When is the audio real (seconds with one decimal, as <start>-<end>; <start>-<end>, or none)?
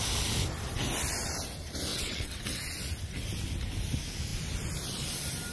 0.0-1.9; 2.6-5.5